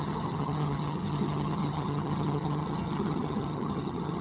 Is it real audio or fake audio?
fake